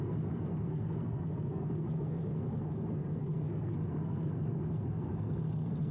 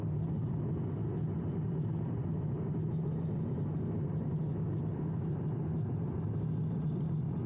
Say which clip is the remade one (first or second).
first